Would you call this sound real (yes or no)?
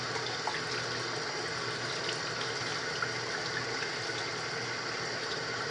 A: yes